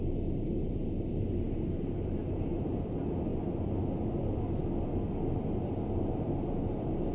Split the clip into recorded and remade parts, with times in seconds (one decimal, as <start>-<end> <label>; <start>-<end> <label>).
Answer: 0.0-7.1 recorded